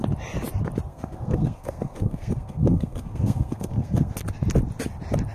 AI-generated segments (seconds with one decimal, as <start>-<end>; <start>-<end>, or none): 0.9-4.1